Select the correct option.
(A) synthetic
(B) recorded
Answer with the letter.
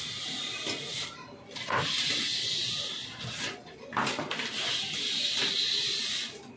B